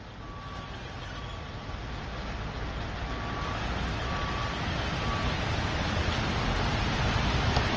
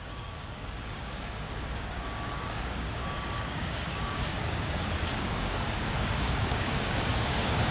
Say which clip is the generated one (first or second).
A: second